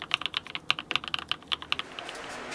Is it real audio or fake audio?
real